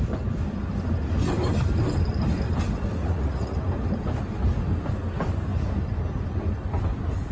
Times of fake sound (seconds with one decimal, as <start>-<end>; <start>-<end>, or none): 3.0-3.6